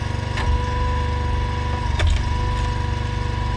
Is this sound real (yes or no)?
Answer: yes